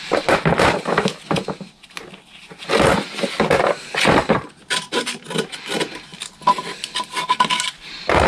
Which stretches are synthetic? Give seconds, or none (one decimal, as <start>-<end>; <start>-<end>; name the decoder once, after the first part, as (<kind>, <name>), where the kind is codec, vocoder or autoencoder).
none